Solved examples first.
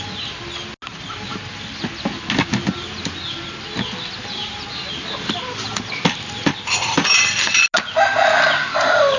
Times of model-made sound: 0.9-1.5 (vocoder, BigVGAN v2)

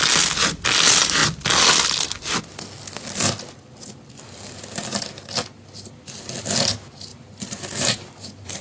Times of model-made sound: 7.1-8.6 (vocoder, BigVGAN v2)

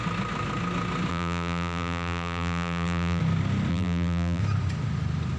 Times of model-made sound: 1.1-3.2 (vocoder, BigVGAN v2); 3.7-4.4